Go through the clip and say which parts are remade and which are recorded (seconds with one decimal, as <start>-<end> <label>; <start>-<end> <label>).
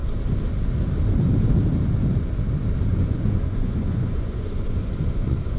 0.0-2.9 recorded; 2.9-5.6 remade